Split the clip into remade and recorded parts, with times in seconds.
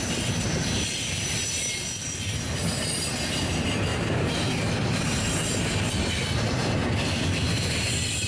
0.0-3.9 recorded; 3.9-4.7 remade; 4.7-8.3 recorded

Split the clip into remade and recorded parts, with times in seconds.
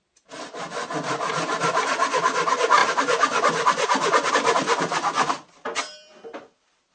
0.0-6.9 recorded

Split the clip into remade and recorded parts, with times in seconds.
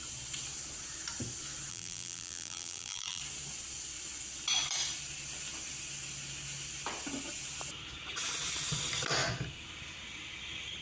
0.0-1.7 recorded; 1.7-3.2 remade; 3.2-10.8 recorded